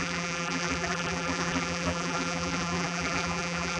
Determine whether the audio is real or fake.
fake